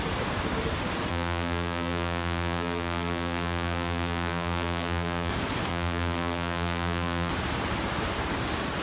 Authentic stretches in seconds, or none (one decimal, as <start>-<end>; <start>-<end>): 0.0-1.1; 5.3-5.7; 7.3-8.8